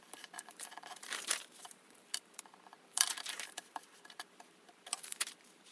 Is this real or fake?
fake